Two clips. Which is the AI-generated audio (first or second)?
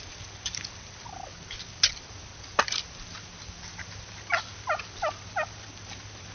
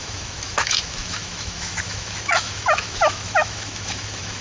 second